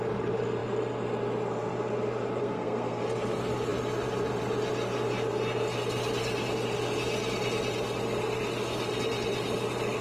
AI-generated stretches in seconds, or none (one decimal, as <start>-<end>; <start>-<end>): 2.4-3.0